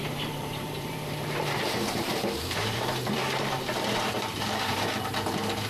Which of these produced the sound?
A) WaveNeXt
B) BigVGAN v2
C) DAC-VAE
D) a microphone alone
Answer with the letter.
B